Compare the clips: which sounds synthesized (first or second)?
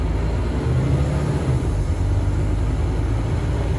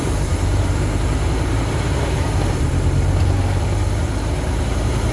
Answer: second